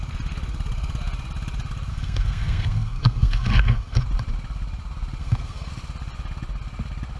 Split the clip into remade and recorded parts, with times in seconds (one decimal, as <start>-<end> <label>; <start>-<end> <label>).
0.0-1.9 recorded; 1.9-4.0 remade; 4.0-5.2 recorded; 5.2-5.7 remade; 5.7-7.2 recorded